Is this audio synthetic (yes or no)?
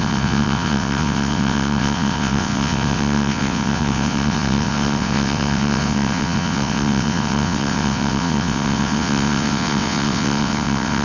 yes